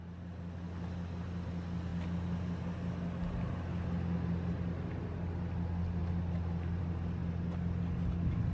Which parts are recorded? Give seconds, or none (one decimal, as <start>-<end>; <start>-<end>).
0.0-8.5